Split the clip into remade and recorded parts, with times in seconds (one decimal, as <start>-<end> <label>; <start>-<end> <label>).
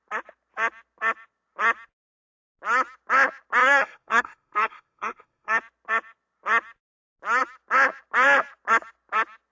0.0-3.6 recorded; 3.6-5.6 remade; 5.6-9.5 recorded